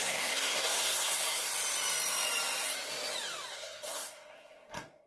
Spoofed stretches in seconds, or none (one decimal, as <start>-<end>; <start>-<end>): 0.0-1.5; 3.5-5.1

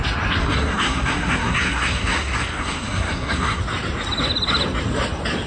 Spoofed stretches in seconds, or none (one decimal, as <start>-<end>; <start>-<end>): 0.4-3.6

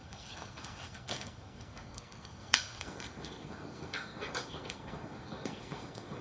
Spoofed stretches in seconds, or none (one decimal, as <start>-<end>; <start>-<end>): 0.0-6.2